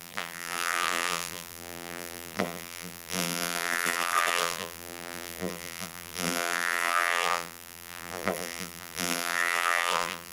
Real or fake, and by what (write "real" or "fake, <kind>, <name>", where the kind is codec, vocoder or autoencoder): fake, vocoder, BigVGAN v2